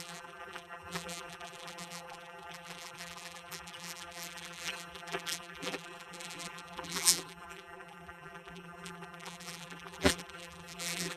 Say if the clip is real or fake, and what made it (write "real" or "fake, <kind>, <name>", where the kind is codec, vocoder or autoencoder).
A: fake, vocoder, BigVGAN v2